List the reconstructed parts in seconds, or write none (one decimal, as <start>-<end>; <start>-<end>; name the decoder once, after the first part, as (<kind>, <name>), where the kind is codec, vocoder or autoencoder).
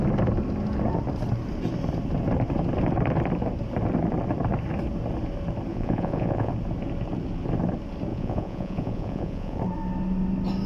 5.7-6.5 (vocoder, Vocos); 8.1-9.6